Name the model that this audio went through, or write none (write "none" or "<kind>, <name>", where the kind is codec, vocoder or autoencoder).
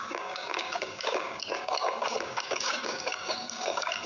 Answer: codec, DAC